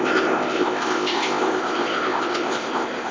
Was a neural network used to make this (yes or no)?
yes